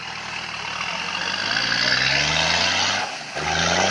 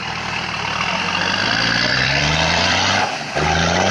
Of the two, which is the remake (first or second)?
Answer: second